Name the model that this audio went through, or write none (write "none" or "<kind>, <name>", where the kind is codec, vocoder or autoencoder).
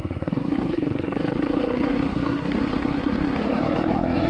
codec, SNAC